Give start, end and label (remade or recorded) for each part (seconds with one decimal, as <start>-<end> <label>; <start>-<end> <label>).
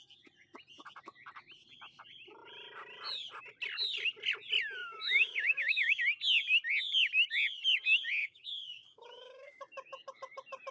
0.0-4.8 recorded; 4.8-6.0 remade; 6.0-8.2 recorded; 8.2-9.6 remade; 9.6-10.7 recorded